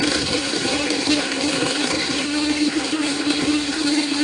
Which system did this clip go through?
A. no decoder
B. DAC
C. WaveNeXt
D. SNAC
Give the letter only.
D